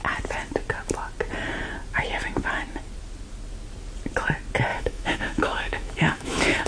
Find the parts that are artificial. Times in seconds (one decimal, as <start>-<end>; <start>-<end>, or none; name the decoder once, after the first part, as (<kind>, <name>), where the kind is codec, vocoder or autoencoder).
4.7-6.7 (autoencoder, DAC-VAE)